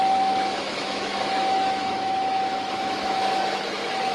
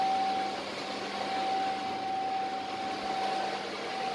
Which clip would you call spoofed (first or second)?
first